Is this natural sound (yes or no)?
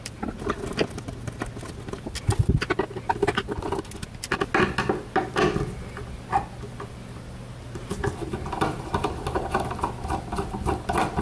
yes